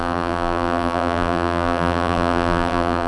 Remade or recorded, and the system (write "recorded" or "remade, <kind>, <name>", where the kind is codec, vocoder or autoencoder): remade, vocoder, BigVGAN v2